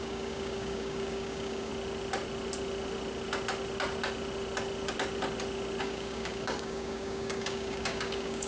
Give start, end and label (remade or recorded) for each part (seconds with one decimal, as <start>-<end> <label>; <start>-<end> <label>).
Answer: 0.0-1.7 remade; 1.7-5.8 recorded; 5.8-8.5 remade